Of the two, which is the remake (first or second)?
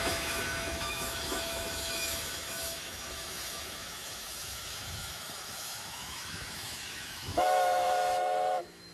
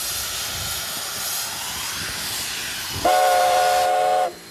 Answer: first